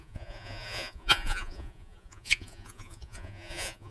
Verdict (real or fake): fake